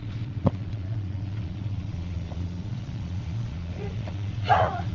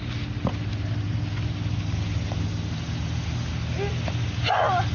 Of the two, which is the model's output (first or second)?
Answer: first